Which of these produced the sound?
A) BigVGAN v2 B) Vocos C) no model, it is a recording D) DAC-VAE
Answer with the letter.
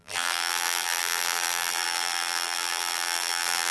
A